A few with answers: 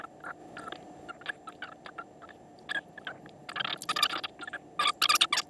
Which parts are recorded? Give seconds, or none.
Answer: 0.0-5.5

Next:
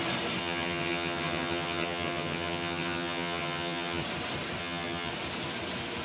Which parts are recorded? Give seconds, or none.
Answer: 0.0-0.4; 4.0-4.6; 5.1-6.0

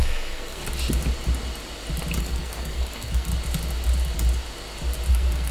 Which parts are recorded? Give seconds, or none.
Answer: 0.6-2.2; 3.3-5.1

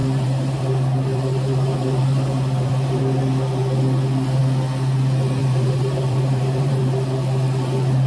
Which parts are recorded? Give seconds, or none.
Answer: 0.6-1.1; 3.0-5.4; 6.8-8.1